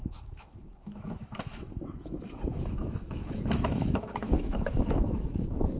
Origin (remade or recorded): remade